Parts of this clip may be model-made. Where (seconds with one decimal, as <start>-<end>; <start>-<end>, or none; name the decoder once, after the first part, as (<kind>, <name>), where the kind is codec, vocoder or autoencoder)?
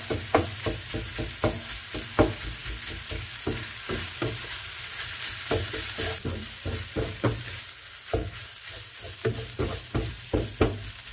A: none